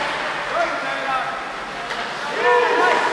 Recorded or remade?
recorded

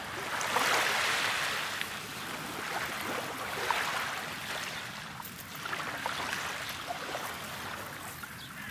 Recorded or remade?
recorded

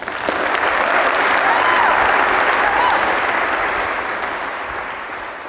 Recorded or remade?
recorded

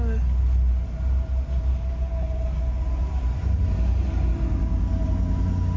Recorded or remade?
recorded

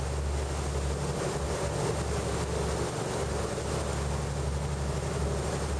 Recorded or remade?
recorded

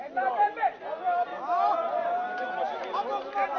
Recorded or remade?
recorded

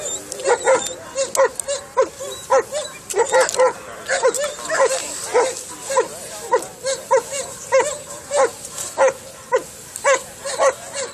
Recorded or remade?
recorded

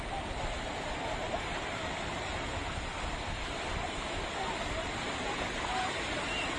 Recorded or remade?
recorded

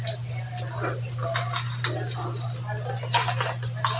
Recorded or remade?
recorded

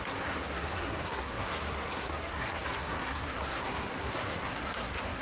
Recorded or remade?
remade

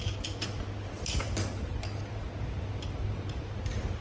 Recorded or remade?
recorded